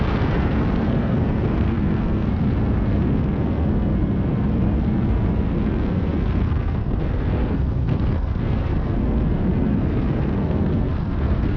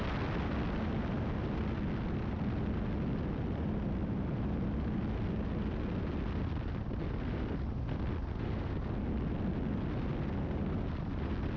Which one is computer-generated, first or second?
first